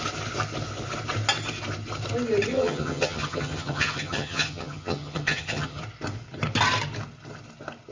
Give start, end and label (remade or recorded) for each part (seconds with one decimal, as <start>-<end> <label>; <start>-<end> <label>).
0.0-2.5 recorded; 2.5-5.8 remade; 5.8-7.9 recorded